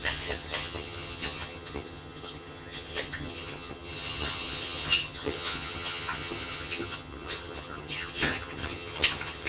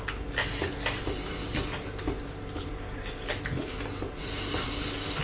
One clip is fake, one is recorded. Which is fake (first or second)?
first